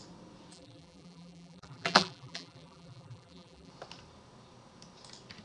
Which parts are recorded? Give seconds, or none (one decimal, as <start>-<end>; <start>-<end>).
0.0-0.5; 3.7-5.4